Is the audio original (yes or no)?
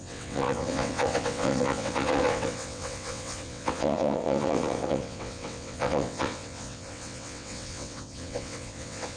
no